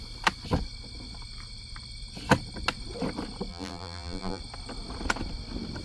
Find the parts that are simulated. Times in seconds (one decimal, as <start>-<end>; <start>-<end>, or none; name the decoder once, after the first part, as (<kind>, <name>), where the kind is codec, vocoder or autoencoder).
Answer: 3.5-4.4 (vocoder, BigVGAN v2)